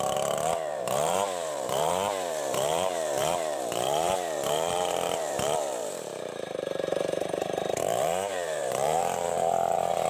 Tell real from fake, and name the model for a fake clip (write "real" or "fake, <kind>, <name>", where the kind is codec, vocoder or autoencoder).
fake, vocoder, BigVGAN v2